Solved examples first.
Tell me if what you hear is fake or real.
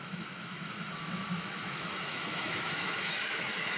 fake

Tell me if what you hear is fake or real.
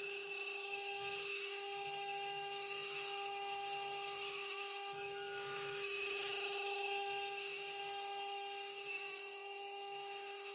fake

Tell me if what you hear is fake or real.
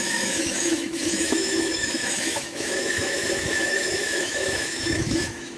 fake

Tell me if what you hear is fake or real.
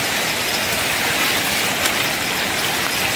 real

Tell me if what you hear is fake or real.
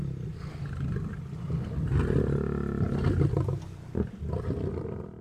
real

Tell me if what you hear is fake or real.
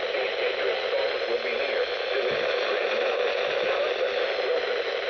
real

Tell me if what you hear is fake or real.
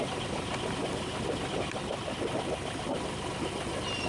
real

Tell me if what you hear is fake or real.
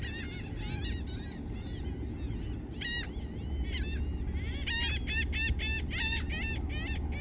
real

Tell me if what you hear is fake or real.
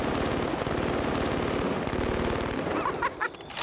real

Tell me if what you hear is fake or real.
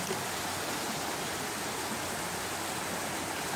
real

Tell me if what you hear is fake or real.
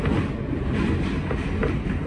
real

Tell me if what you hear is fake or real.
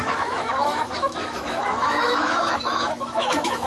fake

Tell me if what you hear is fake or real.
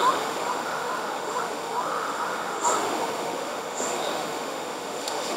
fake